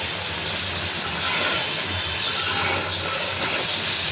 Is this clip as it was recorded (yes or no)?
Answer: yes